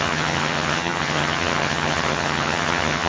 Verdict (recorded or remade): remade